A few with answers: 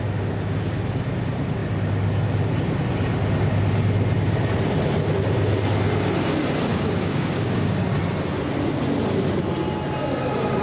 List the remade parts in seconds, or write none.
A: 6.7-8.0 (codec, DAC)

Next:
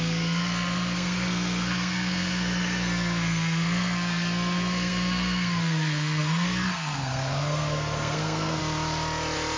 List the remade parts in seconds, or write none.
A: 0.0-8.6 (codec, SNAC)

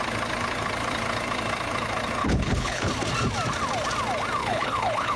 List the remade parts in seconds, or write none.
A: 2.2-2.9 (codec, HILCodec); 4.4-5.2

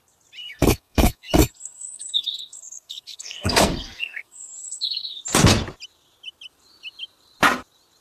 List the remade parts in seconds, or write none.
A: 0.4-5.2 (codec, SNAC)

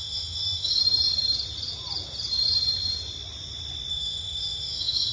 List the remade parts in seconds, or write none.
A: 0.0-0.8 (autoencoder, DAC-VAE); 3.9-5.1

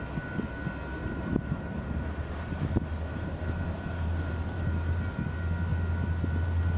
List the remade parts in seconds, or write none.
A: 1.0-5.1 (vocoder, BigVGAN v2)